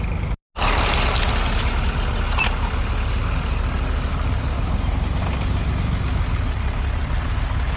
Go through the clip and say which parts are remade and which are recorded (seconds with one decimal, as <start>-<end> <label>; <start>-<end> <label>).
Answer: 0.0-7.8 recorded